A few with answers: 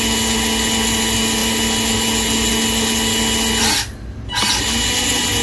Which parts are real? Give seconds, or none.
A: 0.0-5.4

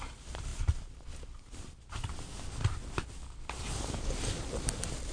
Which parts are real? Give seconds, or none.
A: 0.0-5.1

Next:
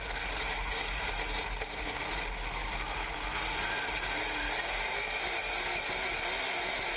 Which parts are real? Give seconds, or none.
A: 0.0-7.0

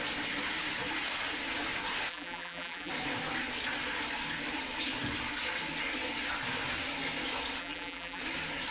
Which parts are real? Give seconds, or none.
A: 0.0-2.1; 2.9-7.6; 8.2-8.7